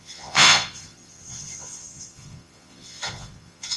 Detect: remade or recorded remade